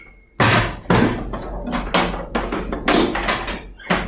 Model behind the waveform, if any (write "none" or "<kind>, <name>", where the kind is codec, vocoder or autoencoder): none